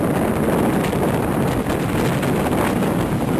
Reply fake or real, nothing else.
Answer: real